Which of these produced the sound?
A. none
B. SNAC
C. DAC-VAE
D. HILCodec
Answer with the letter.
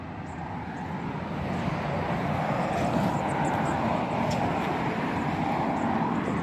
A